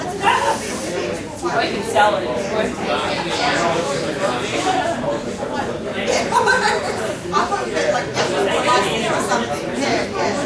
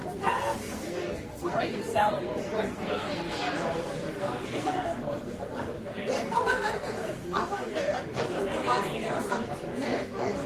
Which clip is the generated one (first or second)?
second